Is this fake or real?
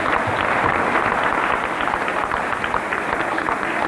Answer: real